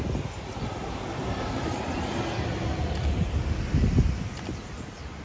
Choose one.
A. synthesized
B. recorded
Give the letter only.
B